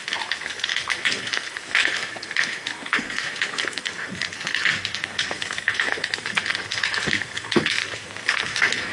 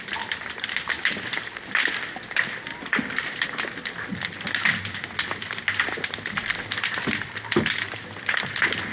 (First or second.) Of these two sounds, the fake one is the first